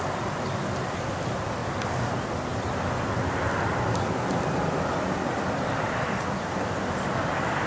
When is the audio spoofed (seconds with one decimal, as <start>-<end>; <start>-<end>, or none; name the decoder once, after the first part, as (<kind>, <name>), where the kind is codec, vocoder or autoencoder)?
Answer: none